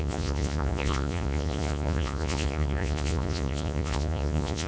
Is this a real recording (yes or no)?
no